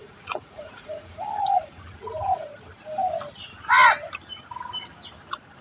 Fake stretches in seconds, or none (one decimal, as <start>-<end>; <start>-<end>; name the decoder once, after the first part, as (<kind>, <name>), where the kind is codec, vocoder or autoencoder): 0.0-2.5 (vocoder, Vocos)